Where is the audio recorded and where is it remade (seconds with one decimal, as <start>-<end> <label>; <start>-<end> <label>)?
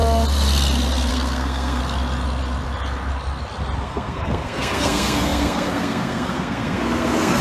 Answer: 0.0-1.1 recorded; 1.1-1.8 remade; 1.8-3.8 recorded; 3.8-7.4 remade